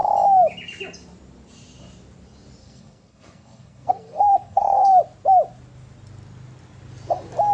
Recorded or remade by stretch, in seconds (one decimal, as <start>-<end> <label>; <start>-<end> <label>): 0.0-2.6 recorded; 2.6-5.0 remade; 5.0-7.5 recorded